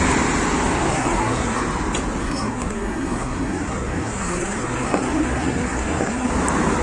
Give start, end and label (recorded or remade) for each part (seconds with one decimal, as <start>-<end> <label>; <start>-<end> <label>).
0.0-0.9 recorded; 0.9-1.6 remade; 1.6-2.2 recorded; 2.2-6.3 remade; 6.3-6.8 recorded